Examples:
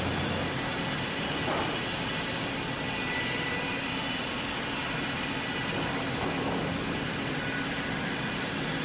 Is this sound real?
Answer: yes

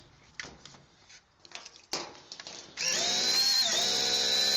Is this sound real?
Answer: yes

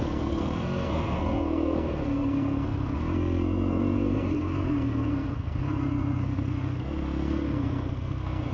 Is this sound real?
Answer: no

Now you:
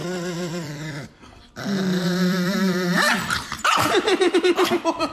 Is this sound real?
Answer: no